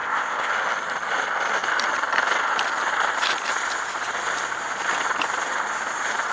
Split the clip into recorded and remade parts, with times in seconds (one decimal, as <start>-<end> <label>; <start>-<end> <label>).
0.0-0.5 remade; 0.5-6.3 recorded